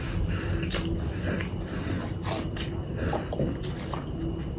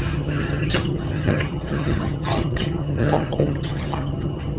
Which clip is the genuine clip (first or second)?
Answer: first